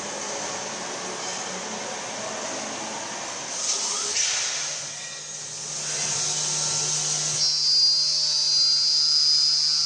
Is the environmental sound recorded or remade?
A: recorded